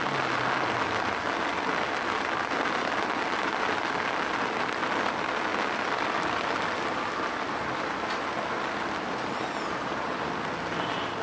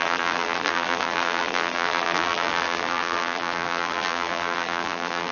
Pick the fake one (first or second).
second